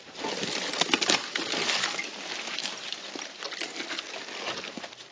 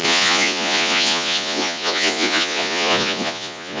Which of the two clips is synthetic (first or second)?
second